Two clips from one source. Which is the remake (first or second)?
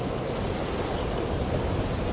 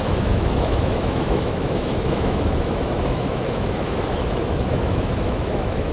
second